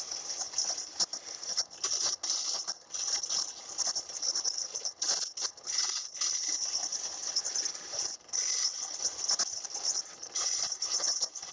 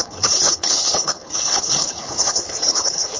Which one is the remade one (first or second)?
second